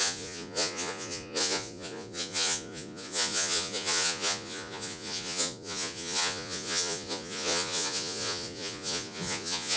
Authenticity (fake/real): fake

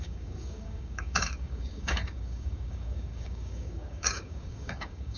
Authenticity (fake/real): fake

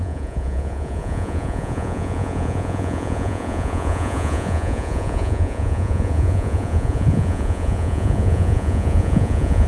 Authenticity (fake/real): fake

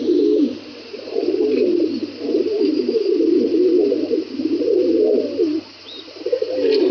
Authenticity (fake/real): real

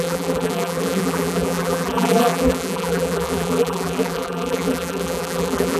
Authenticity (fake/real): fake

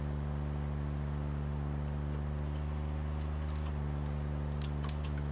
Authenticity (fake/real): real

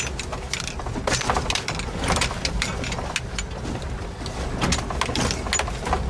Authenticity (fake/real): real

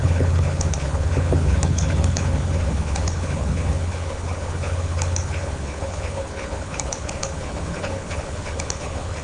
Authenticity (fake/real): fake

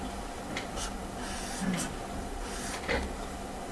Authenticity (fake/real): real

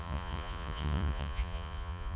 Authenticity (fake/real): fake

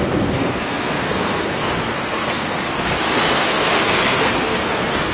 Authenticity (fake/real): fake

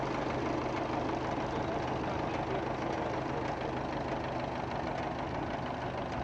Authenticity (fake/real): real